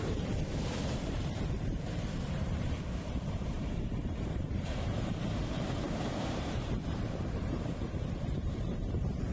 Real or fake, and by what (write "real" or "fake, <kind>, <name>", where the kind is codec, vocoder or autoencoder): fake, vocoder, BigVGAN v2